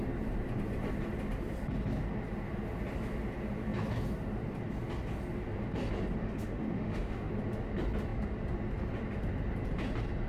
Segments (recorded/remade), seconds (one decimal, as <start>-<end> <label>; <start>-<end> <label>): 0.0-6.2 recorded; 6.2-7.3 remade; 7.3-10.3 recorded